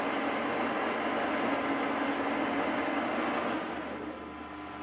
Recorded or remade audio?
recorded